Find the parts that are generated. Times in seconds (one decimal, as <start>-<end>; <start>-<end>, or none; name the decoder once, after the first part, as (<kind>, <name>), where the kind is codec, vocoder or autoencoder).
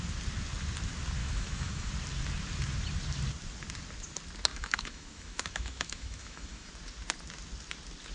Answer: 1.2-1.9 (autoencoder, DAC-VAE); 4.5-6.7